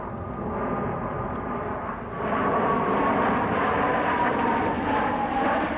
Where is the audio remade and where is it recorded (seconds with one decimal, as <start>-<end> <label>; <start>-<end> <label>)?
0.0-5.8 recorded

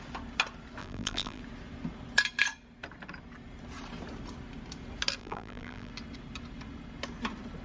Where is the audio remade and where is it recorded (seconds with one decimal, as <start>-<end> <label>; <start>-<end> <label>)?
0.0-0.8 recorded; 0.8-1.4 remade; 1.4-5.2 recorded; 5.2-5.9 remade; 5.9-7.6 recorded

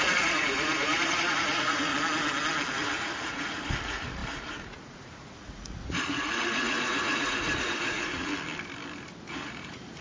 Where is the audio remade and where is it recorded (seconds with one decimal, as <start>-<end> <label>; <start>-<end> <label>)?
0.0-1.9 remade; 1.9-2.7 recorded; 2.7-8.3 remade; 8.3-9.3 recorded; 9.3-10.0 remade

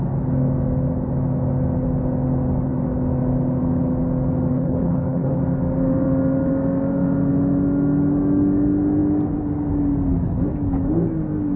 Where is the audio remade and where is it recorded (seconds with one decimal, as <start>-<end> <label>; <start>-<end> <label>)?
0.0-4.5 recorded; 4.5-5.4 remade; 5.4-11.6 recorded

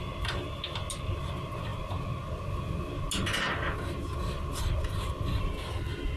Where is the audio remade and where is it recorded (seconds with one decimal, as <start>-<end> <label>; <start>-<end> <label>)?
0.0-6.2 recorded

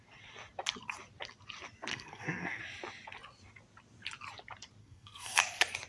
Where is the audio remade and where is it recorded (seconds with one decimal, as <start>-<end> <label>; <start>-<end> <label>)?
0.0-1.9 recorded; 1.9-2.6 remade; 2.6-4.8 recorded; 4.8-5.4 remade; 5.4-5.9 recorded

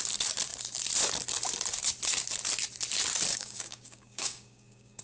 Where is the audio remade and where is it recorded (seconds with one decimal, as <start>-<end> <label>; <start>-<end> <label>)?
0.0-3.3 recorded; 3.3-5.0 remade

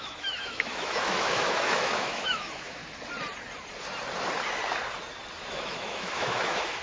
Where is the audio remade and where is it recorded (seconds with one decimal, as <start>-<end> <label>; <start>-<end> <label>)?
0.0-2.8 remade; 2.8-5.5 recorded; 5.5-6.8 remade